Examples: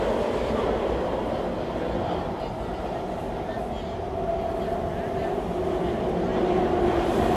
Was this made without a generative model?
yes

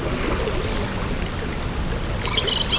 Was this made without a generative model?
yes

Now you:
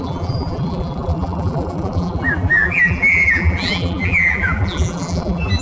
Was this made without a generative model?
no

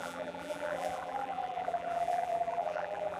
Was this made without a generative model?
no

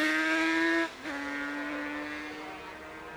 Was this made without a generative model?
yes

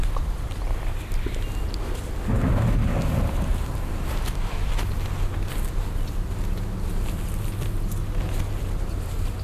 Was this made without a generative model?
yes